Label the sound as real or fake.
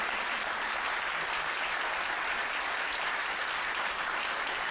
real